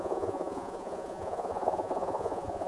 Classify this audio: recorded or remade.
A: remade